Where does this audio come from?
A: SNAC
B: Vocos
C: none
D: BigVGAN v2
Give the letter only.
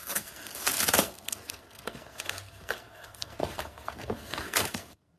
A